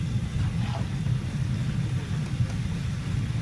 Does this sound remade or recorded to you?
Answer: recorded